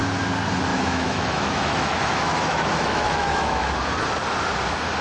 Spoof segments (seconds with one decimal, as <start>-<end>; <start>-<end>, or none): 0.7-3.7